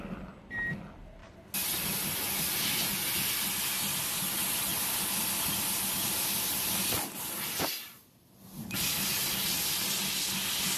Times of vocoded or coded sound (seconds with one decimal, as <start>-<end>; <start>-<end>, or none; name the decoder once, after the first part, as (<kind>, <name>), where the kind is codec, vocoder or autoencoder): none